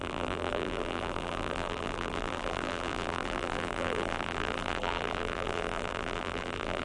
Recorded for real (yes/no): no